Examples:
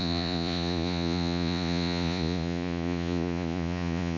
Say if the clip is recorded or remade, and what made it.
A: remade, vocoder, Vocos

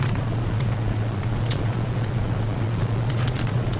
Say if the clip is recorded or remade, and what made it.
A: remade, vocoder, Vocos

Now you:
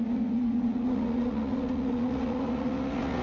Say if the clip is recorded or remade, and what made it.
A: remade, vocoder, Vocos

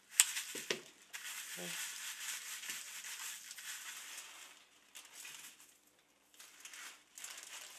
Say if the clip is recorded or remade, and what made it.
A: recorded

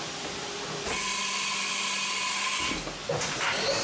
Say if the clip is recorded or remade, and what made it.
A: recorded